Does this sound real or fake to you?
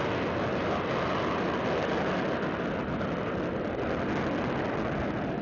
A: real